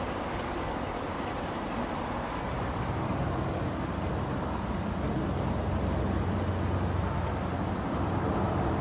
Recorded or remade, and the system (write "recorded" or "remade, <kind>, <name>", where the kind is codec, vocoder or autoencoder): recorded